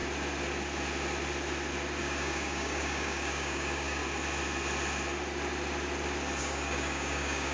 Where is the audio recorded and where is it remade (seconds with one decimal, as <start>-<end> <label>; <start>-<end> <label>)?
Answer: 0.0-2.0 recorded; 2.0-4.0 remade; 4.0-6.4 recorded; 6.4-7.5 remade